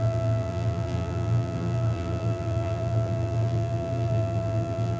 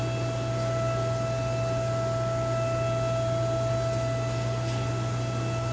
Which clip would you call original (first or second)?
second